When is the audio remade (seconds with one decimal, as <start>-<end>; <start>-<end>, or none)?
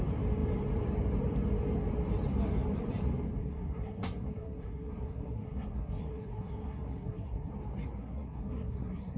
3.4-7.5; 8.0-9.2